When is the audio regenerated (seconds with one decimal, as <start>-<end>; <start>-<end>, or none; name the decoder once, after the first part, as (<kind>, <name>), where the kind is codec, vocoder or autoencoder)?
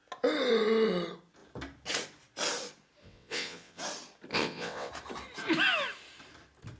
3.0-3.8 (vocoder, WaveNeXt); 4.3-4.9